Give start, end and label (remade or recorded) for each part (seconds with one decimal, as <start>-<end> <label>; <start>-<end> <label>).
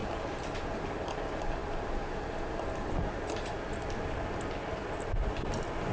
0.0-5.9 recorded